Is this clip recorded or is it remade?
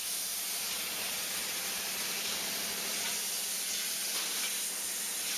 recorded